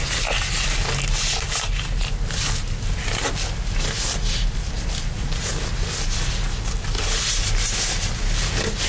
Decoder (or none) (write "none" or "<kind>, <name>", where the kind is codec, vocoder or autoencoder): none